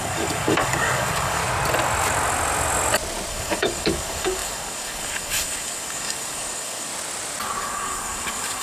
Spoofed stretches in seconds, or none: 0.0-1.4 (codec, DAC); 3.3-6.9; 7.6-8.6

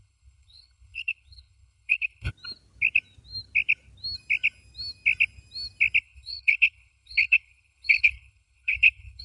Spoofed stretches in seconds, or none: 0.0-2.3 (codec, HILCodec); 6.0-9.2